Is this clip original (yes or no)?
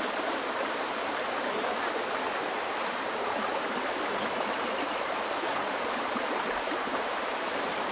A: no